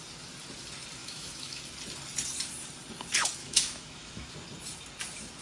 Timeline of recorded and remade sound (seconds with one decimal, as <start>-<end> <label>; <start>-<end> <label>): 0.0-1.0 recorded; 1.0-1.6 remade; 1.6-3.4 recorded; 3.4-4.3 remade; 4.3-5.4 recorded